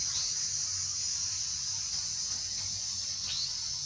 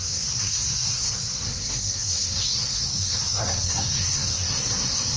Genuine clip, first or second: first